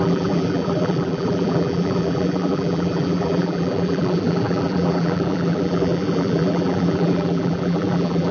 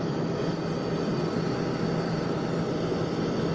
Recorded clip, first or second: second